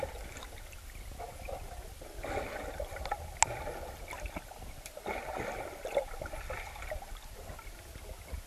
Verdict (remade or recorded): recorded